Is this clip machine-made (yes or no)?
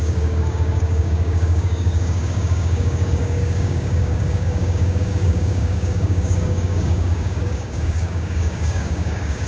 yes